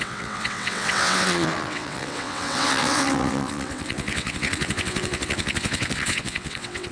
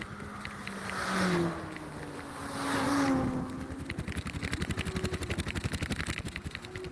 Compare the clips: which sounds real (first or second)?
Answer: second